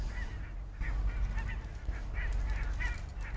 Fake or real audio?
real